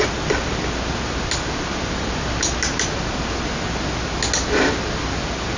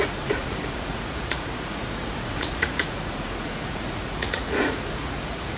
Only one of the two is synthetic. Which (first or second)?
second